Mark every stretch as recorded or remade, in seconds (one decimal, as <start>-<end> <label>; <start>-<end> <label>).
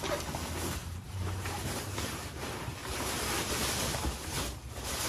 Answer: 0.0-0.8 recorded; 0.8-2.4 remade; 2.4-2.8 recorded; 2.8-4.4 remade; 4.4-5.1 recorded